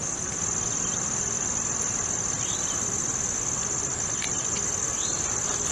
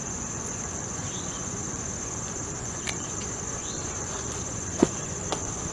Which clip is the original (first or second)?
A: first